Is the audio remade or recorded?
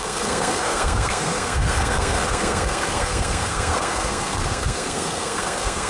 remade